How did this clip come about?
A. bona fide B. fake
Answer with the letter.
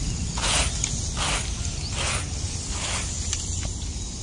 A